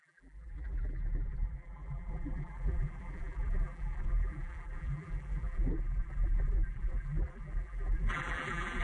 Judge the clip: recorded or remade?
remade